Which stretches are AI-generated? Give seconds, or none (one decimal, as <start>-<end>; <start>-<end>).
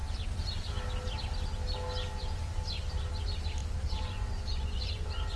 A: 3.6-5.0